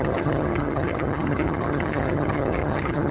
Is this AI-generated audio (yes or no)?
yes